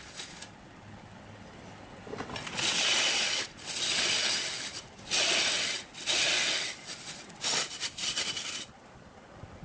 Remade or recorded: recorded